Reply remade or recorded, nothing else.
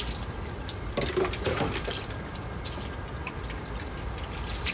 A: remade